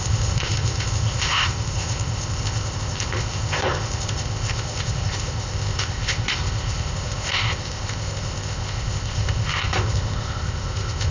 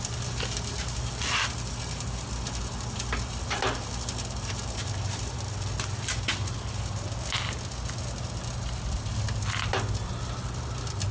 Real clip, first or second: second